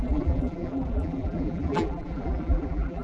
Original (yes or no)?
no